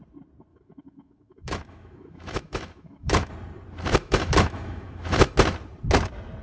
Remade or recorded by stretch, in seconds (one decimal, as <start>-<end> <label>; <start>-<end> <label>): 0.0-0.5 recorded; 0.5-3.3 remade; 3.3-4.0 recorded; 4.0-5.3 remade; 5.3-6.4 recorded